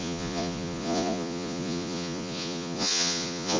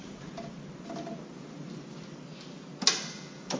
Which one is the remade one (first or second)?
first